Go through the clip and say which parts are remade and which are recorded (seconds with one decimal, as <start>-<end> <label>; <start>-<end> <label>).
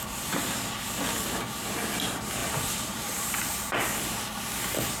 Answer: 0.0-2.4 recorded; 2.4-3.8 remade; 3.8-5.0 recorded